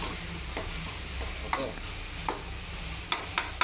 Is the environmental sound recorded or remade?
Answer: recorded